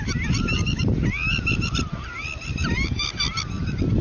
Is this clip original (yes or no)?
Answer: yes